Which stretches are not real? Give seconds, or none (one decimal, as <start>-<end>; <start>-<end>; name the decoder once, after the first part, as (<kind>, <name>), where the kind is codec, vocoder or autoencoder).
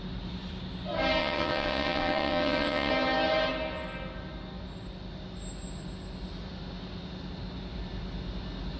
1.2-2.9 (vocoder, WaveNeXt)